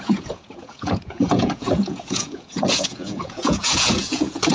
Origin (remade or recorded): remade